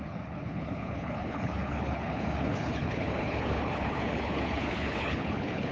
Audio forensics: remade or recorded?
remade